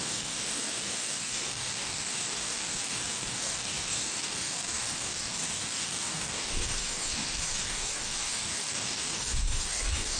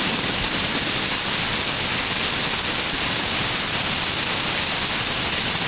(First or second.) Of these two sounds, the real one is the second